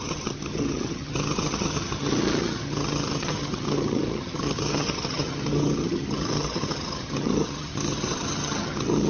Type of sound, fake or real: fake